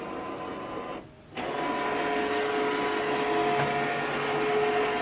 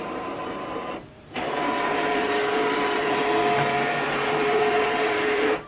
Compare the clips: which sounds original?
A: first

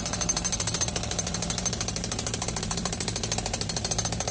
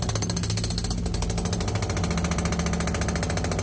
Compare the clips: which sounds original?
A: second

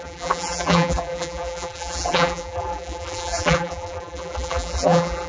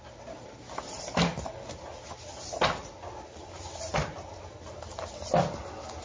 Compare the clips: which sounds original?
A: second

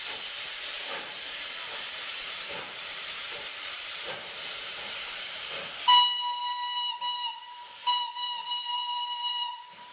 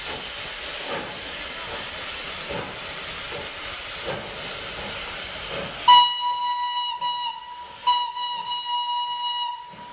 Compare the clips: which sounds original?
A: second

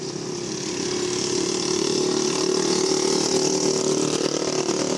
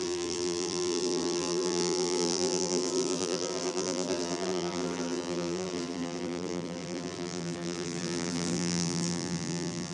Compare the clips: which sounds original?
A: first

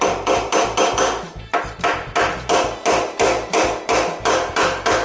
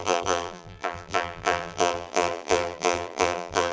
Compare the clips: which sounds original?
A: first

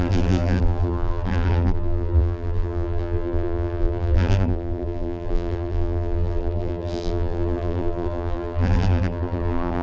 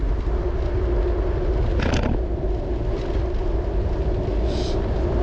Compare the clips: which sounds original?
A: second